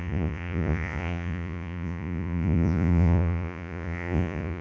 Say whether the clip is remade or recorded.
remade